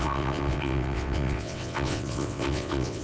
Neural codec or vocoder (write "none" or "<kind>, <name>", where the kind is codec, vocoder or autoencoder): vocoder, WaveNeXt